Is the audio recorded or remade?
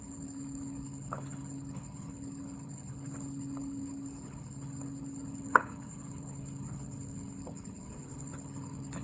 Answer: remade